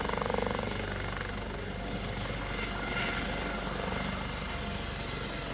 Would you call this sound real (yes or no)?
yes